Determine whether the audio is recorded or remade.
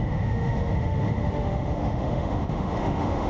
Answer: remade